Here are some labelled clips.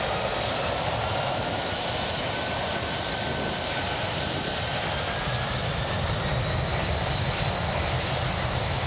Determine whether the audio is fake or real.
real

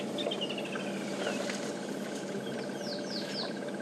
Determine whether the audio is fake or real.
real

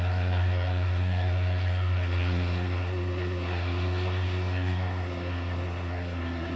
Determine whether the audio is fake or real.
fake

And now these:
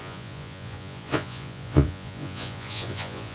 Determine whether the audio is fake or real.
fake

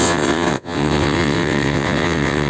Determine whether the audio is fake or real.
fake